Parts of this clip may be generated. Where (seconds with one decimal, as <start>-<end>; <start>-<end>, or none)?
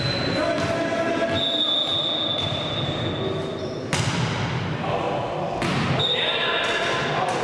none